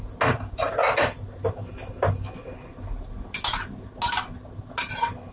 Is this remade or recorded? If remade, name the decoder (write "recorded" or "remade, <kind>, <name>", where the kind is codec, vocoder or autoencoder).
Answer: recorded